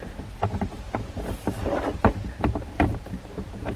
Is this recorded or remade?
remade